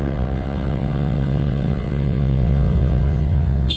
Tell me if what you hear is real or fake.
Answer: fake